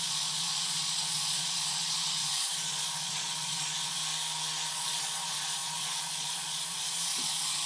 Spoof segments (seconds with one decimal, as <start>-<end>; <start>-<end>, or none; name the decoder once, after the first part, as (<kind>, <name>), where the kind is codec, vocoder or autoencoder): 0.0-4.0 (vocoder, Vocos); 4.7-7.7